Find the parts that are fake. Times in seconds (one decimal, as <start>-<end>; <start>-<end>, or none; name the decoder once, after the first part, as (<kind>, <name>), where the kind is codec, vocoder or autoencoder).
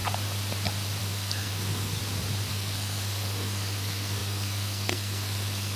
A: 1.0-2.0 (codec, SNAC); 2.5-5.8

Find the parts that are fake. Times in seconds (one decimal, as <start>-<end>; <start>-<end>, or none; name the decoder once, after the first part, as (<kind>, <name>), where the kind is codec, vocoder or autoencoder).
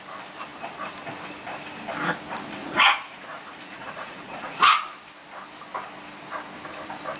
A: 2.6-4.7 (vocoder, Vocos)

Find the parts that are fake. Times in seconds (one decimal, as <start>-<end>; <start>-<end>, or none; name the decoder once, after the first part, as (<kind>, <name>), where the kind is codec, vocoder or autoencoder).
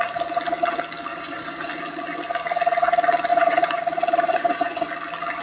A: 1.1-1.7 (vocoder, Vocos); 3.3-3.8; 4.3-4.9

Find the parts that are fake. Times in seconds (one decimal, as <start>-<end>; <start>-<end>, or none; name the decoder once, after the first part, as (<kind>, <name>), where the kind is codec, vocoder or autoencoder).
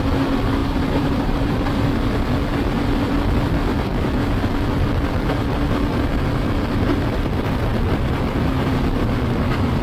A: 0.6-1.5 (vocoder, BigVGAN v2)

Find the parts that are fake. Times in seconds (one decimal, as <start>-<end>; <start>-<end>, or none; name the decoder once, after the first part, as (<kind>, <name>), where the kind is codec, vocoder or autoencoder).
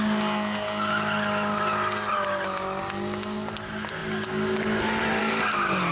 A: none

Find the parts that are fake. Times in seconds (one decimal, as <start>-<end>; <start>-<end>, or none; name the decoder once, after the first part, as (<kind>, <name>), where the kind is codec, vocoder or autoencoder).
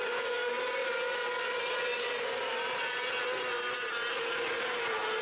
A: none